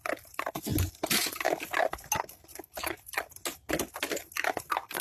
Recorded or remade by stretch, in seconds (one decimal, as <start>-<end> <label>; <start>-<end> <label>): 0.0-5.0 recorded